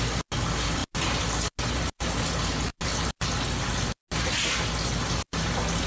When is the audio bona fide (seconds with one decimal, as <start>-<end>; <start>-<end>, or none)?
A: 0.0-5.9